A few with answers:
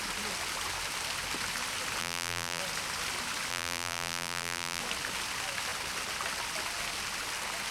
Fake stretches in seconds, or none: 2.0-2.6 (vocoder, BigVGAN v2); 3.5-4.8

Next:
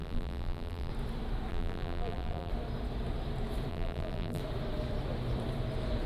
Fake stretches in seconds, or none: 0.0-0.9 (vocoder, BigVGAN v2); 1.5-2.5; 3.7-4.4

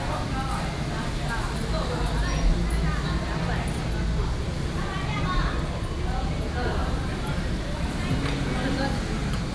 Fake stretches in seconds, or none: 6.8-8.2 (vocoder, BigVGAN v2)

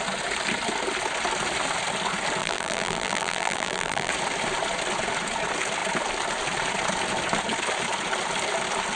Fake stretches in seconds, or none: 2.4-4.1 (vocoder, BigVGAN v2)

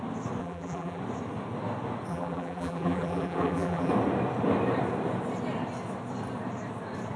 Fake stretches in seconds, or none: 0.4-1.0 (vocoder, BigVGAN v2); 2.1-3.9

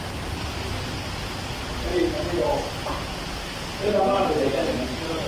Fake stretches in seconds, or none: none

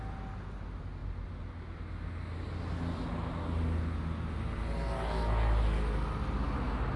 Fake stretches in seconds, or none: none

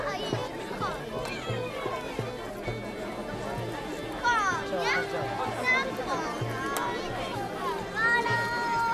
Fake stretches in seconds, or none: none